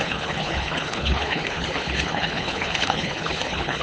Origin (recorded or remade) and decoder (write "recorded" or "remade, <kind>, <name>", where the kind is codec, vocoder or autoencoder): remade, codec, HILCodec